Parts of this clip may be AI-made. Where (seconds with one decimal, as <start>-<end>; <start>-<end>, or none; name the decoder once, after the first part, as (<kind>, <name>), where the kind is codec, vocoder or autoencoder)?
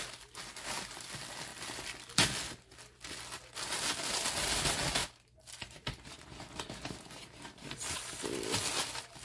none